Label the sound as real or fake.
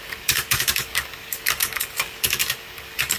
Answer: fake